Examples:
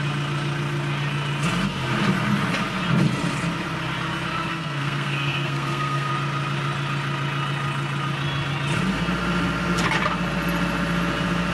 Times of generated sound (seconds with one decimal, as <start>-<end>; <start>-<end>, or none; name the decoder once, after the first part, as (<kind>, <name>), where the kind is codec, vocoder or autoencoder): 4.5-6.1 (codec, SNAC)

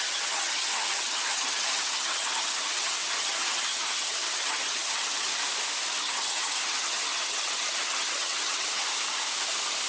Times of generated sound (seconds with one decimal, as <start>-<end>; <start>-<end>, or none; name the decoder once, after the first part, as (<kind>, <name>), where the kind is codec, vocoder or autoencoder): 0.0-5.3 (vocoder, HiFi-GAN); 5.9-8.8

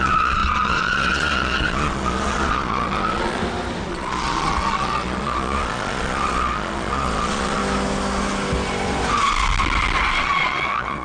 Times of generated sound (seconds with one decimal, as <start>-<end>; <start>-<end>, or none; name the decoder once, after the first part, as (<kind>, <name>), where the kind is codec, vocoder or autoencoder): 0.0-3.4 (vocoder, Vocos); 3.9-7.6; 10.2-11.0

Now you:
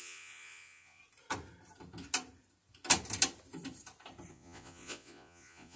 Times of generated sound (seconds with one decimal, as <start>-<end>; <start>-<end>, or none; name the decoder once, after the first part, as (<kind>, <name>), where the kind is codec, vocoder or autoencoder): 0.0-1.0 (vocoder, Vocos); 4.3-5.8